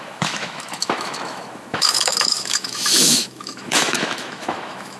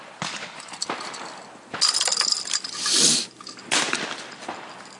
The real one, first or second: second